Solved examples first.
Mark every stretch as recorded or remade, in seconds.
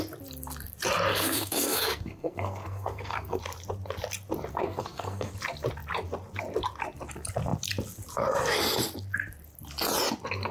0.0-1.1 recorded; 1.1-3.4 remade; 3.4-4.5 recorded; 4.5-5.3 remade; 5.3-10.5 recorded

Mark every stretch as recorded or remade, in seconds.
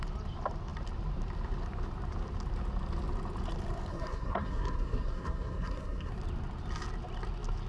0.0-3.9 recorded; 3.9-6.1 remade; 6.1-7.7 recorded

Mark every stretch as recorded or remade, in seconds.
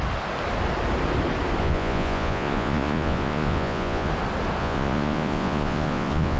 0.0-1.6 recorded; 1.6-4.1 remade; 4.1-4.6 recorded; 4.6-6.4 remade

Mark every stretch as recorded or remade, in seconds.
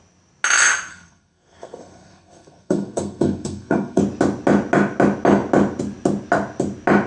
0.0-0.9 recorded; 0.9-4.0 remade; 4.0-7.1 recorded